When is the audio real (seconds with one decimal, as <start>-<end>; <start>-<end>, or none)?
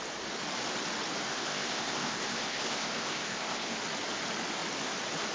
0.0-1.3; 3.8-5.3